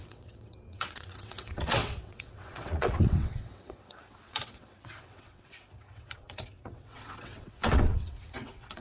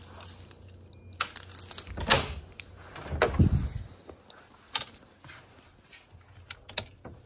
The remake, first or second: first